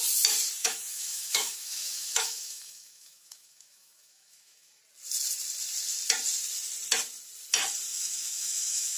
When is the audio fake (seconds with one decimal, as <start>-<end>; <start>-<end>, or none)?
0.6-4.8; 7.9-9.0